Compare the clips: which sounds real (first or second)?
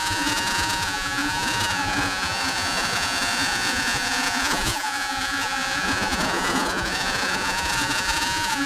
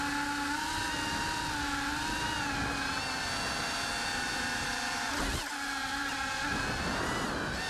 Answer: second